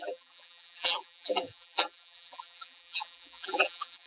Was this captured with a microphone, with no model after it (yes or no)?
no